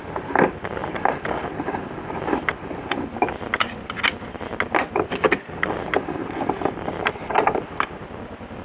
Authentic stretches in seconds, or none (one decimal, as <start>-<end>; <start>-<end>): 0.0-8.6